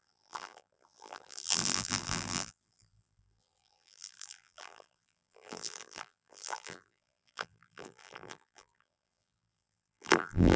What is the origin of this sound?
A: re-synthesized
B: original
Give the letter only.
A